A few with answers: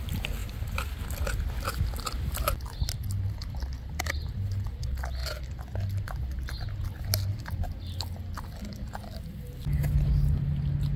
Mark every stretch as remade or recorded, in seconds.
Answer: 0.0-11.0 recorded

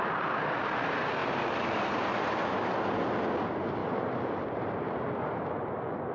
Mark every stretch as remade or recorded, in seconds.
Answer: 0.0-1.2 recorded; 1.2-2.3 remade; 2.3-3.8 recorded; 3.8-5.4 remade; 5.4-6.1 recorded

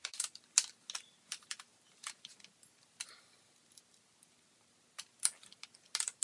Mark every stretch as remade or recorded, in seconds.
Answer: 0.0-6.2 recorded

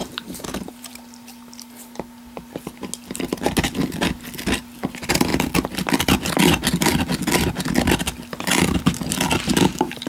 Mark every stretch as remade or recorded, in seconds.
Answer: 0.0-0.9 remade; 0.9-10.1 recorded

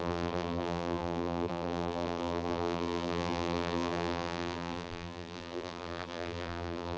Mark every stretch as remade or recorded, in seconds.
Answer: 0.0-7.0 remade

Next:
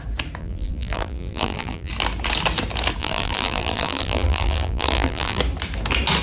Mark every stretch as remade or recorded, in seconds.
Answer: 0.0-0.4 recorded; 0.4-1.9 remade; 1.9-3.0 recorded; 3.0-5.4 remade; 5.4-6.2 recorded